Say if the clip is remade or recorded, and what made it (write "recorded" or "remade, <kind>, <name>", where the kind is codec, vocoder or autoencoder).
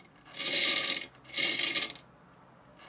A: recorded